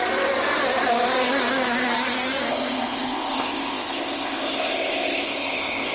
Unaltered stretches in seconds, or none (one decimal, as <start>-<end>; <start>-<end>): 0.0-2.5